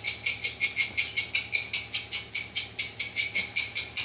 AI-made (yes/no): no